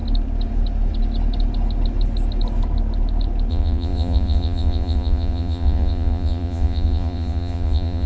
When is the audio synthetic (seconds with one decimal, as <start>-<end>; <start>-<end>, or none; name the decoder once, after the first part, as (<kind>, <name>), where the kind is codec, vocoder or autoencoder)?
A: 3.5-8.1 (vocoder, Vocos)